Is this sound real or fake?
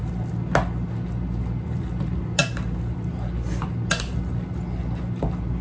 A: real